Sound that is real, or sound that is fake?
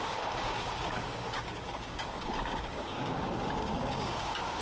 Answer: fake